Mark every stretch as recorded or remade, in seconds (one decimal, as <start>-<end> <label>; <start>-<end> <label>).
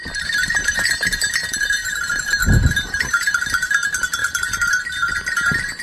0.0-0.4 recorded; 0.4-2.2 remade; 2.2-2.6 recorded; 2.6-3.4 remade; 3.4-4.2 recorded; 4.2-5.1 remade; 5.1-5.8 recorded